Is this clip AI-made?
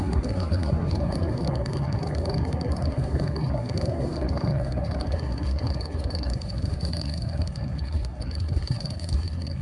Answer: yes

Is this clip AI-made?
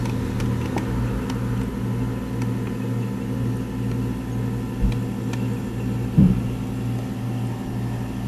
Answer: no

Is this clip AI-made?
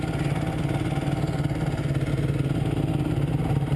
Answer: no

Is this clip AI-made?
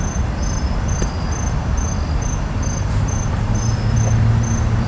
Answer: no